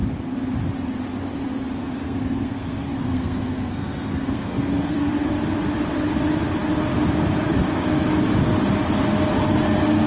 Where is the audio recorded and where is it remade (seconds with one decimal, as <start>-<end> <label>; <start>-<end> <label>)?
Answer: 0.0-1.8 recorded; 1.8-5.1 remade; 5.1-10.1 recorded

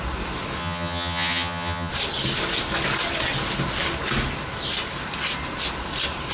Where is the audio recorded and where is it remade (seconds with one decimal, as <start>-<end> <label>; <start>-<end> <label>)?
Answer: 0.0-0.6 recorded; 0.6-1.9 remade; 1.9-6.3 recorded

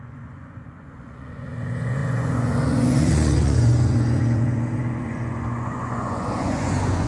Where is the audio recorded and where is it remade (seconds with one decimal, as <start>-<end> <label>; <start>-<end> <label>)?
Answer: 0.0-7.1 remade

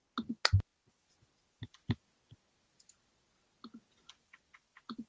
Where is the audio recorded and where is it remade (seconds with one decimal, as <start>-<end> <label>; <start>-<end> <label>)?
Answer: 0.0-5.1 recorded

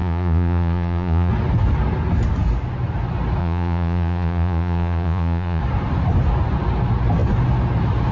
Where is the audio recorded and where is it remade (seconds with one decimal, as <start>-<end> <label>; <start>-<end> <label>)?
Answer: 0.0-1.3 remade; 1.3-3.4 recorded; 3.4-5.6 remade; 5.6-8.1 recorded

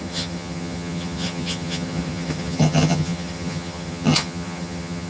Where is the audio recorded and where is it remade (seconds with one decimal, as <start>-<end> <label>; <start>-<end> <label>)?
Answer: 0.0-5.1 remade